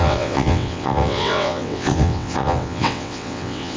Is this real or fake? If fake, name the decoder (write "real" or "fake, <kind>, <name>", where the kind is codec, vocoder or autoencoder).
fake, vocoder, WaveNeXt